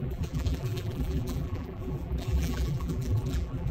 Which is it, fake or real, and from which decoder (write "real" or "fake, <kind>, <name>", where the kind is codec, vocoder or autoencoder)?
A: fake, vocoder, BigVGAN v2